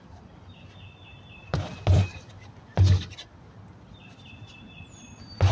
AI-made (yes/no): no